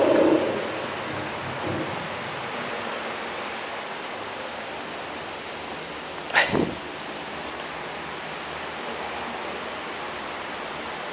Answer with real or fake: real